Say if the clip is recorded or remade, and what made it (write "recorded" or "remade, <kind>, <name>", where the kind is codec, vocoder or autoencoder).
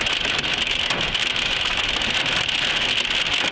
recorded